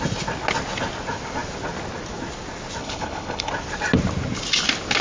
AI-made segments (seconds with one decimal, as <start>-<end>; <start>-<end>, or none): 2.8-3.5